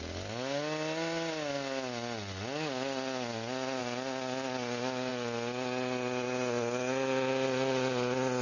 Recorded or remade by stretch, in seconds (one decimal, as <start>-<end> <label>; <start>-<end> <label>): 0.0-8.4 recorded